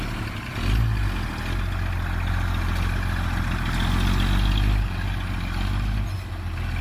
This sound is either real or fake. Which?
real